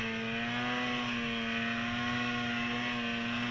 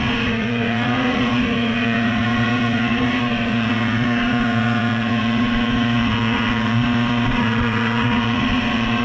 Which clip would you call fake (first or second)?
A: second